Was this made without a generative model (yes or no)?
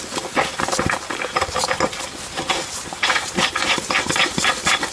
yes